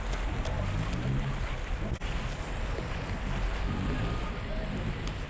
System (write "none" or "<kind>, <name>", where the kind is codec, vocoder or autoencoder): none